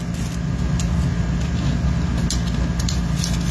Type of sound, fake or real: real